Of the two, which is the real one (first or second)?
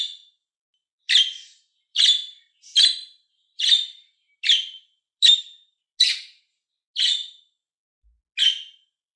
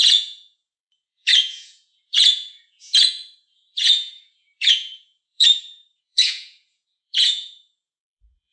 first